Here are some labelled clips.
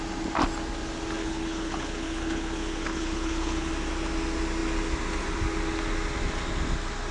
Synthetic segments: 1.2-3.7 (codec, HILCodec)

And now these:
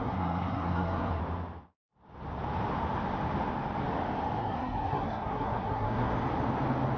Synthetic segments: 0.0-1.2 (codec, SNAC); 4.4-6.1

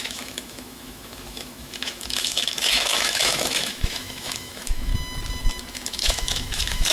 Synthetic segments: 0.0-4.9 (autoencoder, DAC-VAE); 5.7-6.9

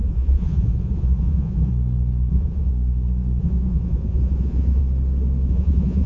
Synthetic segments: 0.0-1.7 (vocoder, Vocos); 2.3-2.7; 3.4-4.8; 5.5-6.1

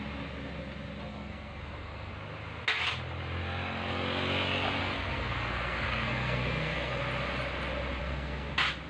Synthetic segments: 1.1-2.1 (codec, SNAC); 4.8-7.0; 8.0-8.5

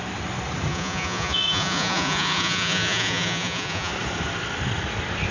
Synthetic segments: 0.7-3.9 (vocoder, Vocos)